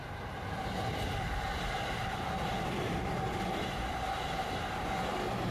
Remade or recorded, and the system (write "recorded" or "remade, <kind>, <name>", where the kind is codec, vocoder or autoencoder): remade, vocoder, BigVGAN v2